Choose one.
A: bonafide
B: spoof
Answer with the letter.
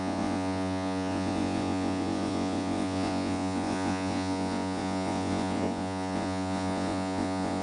B